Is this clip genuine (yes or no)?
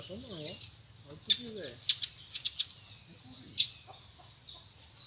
yes